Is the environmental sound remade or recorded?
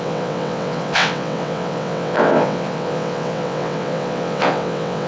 remade